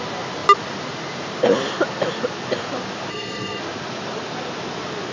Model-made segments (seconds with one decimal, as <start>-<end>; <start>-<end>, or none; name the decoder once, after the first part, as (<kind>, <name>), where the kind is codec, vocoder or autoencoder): 3.1-3.6 (codec, SNAC)